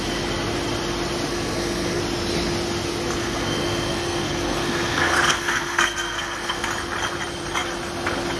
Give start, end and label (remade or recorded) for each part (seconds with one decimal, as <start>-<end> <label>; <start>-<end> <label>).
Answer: 0.0-1.3 recorded; 1.3-2.0 remade; 2.0-3.2 recorded; 3.2-6.7 remade; 6.7-8.4 recorded